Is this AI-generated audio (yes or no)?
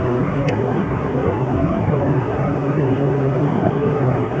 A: yes